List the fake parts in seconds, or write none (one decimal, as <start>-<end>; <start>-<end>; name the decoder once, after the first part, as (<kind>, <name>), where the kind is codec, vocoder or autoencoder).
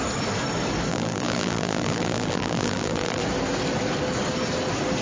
0.9-3.2 (vocoder, BigVGAN v2)